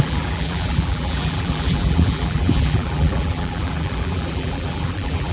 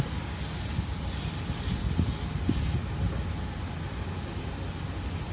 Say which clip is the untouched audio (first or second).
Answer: second